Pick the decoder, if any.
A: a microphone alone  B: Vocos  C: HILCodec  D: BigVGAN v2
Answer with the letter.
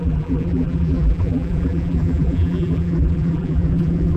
D